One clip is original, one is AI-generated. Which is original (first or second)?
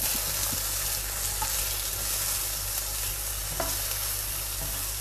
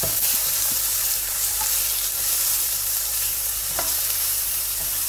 first